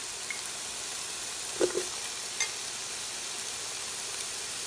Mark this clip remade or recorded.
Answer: recorded